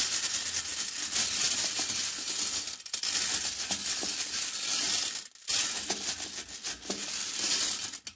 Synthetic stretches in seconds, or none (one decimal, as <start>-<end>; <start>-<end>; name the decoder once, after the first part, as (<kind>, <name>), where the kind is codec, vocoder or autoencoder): none